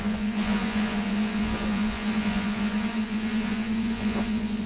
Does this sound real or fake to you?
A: fake